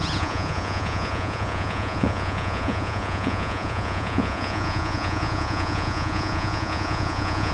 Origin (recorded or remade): remade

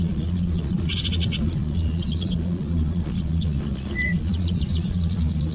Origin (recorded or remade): remade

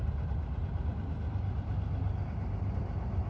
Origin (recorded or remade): recorded